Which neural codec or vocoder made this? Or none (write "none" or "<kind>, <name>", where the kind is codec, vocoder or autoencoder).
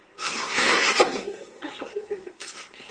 codec, SNAC